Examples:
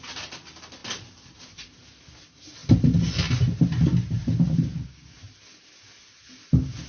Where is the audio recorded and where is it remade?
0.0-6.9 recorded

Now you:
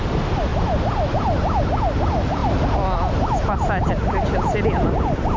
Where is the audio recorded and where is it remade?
0.0-0.5 recorded; 0.5-1.6 remade; 1.6-5.4 recorded